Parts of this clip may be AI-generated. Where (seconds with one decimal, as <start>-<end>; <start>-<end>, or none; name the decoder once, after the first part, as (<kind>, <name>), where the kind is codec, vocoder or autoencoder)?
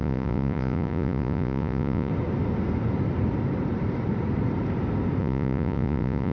0.0-2.1 (vocoder, Vocos); 5.2-6.3